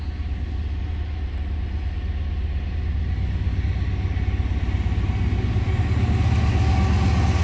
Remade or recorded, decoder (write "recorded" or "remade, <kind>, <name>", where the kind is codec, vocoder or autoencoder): recorded